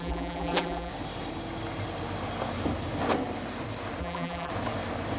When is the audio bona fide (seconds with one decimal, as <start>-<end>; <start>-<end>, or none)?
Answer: 0.9-4.0; 4.5-5.2